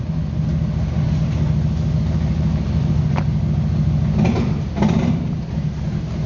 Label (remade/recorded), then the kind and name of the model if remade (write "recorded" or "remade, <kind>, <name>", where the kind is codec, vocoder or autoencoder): recorded